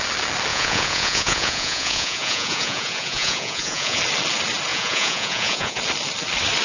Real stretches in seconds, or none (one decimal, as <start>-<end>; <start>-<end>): 0.0-0.5; 4.0-4.7; 5.8-6.6